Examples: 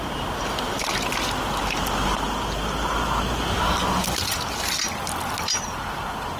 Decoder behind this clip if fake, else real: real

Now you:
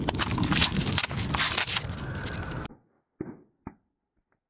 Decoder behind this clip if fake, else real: real